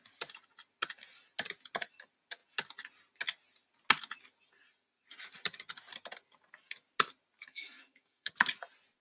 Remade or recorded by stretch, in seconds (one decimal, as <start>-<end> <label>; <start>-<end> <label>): 0.0-7.4 recorded; 7.4-8.3 remade; 8.3-9.0 recorded